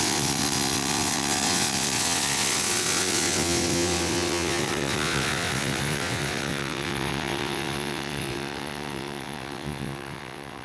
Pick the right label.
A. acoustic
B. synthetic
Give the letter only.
B